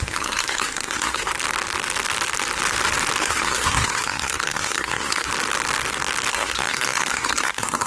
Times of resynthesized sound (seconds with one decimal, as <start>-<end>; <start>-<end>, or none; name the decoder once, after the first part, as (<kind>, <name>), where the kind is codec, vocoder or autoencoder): 0.0-1.3 (codec, SNAC); 3.2-5.3; 6.3-7.9